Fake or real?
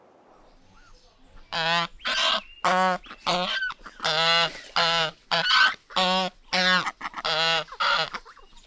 real